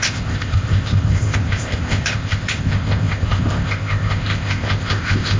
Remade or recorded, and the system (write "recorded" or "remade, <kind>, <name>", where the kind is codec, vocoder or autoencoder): remade, codec, ZipCodec